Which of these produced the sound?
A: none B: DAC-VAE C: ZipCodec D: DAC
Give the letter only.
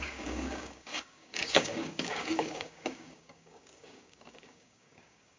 D